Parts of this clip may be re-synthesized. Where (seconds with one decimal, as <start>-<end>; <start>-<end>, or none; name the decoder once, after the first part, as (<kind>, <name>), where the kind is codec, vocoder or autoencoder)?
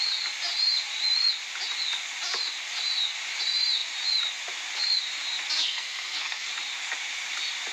5.6-6.5 (codec, SNAC)